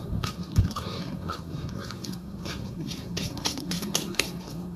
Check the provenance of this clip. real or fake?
fake